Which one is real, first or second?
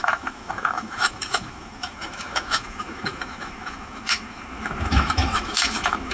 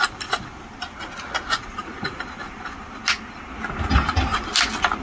second